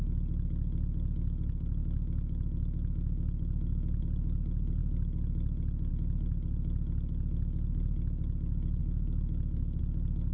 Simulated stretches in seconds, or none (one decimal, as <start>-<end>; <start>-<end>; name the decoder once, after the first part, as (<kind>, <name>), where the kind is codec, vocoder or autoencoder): 1.8-4.0 (autoencoder, DAC-VAE); 8.8-9.8